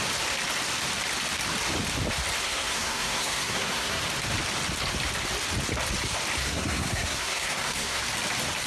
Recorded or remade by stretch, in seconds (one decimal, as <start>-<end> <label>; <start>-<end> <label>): 0.0-2.4 recorded; 2.4-4.0 remade; 4.0-6.4 recorded; 6.4-8.0 remade; 8.0-8.7 recorded